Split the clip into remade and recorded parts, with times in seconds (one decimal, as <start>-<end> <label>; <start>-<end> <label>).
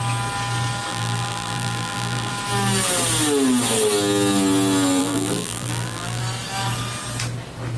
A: 0.0-0.9 recorded; 0.9-2.3 remade; 2.3-5.0 recorded; 5.0-6.2 remade; 6.2-7.8 recorded